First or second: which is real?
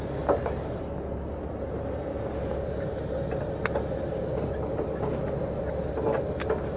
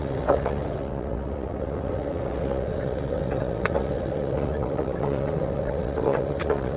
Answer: first